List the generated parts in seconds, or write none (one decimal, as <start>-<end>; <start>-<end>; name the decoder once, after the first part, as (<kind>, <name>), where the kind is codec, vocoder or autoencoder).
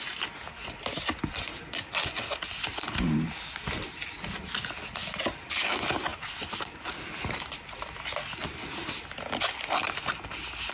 5.0-5.6 (vocoder, BigVGAN v2); 6.1-7.2